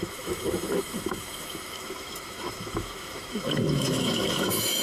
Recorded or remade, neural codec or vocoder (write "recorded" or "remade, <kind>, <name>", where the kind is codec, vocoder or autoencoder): remade, autoencoder, DAC-VAE